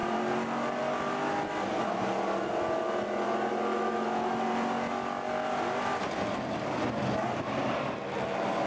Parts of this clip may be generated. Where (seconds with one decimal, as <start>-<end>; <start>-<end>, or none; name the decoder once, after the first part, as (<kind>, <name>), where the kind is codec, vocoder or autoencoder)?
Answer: 3.7-4.3 (autoencoder, DAC-VAE)